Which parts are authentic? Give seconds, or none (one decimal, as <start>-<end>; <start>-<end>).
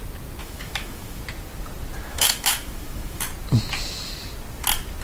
0.0-0.4; 1.2-2.1; 3.2-5.0